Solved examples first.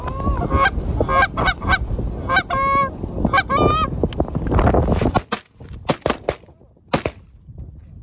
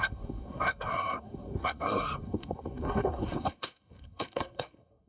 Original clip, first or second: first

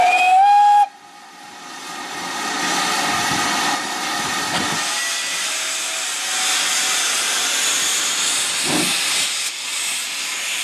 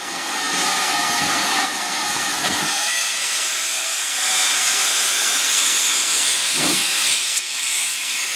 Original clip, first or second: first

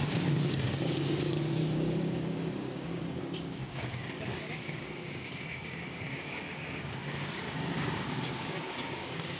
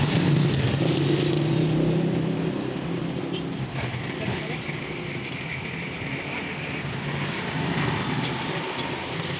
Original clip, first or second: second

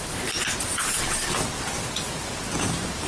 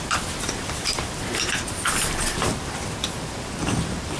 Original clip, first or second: first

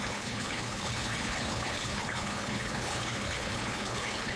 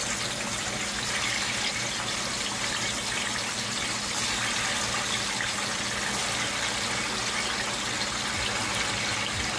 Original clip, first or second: second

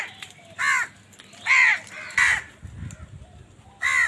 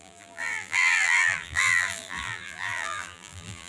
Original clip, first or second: first